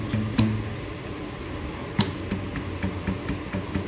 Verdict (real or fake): real